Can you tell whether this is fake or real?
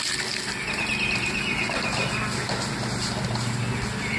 real